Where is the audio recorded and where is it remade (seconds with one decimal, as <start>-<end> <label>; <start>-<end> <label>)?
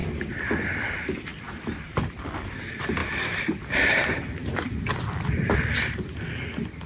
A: 0.0-3.0 recorded; 3.0-5.0 remade; 5.0-6.9 recorded